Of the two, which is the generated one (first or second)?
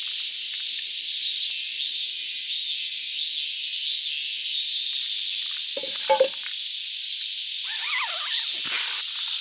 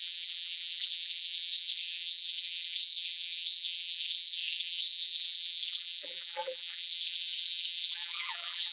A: second